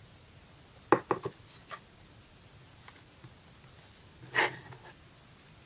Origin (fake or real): real